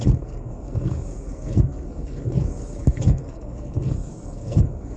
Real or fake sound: fake